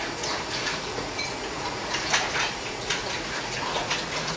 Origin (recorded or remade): remade